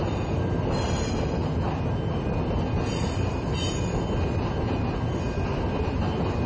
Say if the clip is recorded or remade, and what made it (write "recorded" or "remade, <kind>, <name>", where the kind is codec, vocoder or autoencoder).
recorded